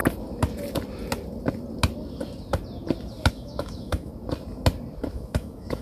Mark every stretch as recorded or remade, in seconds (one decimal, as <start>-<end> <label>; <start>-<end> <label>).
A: 0.0-3.3 recorded; 3.3-4.1 remade; 4.1-5.1 recorded; 5.1-5.8 remade